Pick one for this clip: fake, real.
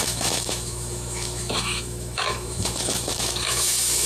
fake